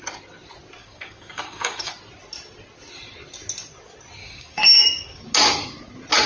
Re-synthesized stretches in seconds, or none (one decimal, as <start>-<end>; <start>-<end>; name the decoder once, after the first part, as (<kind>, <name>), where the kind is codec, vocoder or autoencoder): 0.8-1.9 (codec, DAC); 4.2-5.2

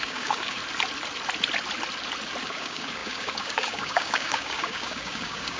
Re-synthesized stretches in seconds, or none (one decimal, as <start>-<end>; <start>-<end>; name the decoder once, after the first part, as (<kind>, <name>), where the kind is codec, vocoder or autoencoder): 0.0-0.6 (codec, DAC); 2.4-5.6

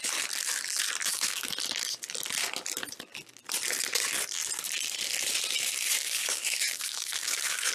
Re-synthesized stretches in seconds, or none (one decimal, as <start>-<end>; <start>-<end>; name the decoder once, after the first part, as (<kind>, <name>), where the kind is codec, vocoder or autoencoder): 1.0-1.5 (codec, DAC); 5.9-7.7

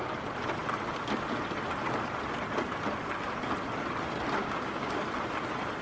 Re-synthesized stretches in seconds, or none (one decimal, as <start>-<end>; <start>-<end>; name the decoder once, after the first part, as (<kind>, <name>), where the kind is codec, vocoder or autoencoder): 4.4-5.0 (codec, DAC)

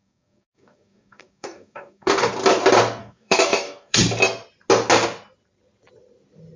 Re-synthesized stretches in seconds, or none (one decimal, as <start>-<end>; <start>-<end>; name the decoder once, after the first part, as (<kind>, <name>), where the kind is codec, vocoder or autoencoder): 0.0-2.3 (codec, DAC); 3.0-4.0

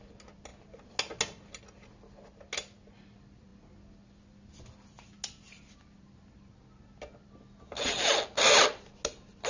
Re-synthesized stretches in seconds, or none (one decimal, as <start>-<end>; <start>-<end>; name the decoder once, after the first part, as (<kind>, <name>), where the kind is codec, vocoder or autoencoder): none

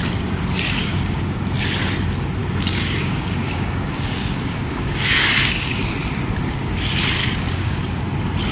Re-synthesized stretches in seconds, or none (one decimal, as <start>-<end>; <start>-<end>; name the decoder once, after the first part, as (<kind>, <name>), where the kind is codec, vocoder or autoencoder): 0.8-1.4 (codec, DAC); 2.4-5.8; 7.2-8.0

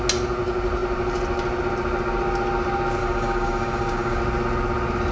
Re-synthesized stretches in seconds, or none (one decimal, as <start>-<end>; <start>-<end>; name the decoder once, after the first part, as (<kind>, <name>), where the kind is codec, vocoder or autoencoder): 3.0-4.2 (codec, DAC)